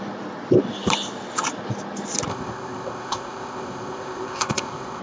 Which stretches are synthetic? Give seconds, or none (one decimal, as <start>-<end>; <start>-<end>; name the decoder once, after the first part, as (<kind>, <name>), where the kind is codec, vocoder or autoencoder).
2.3-5.0 (codec, ZipCodec)